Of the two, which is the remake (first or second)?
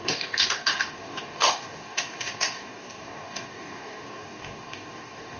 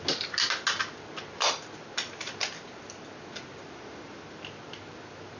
first